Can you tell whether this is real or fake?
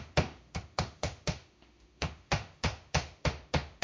fake